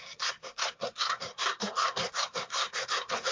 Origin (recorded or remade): remade